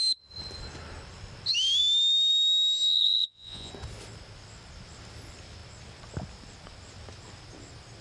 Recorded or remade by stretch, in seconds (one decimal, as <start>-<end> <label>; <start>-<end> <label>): 0.0-2.9 recorded; 2.9-3.7 remade; 3.7-8.0 recorded